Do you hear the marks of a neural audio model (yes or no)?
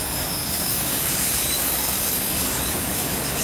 yes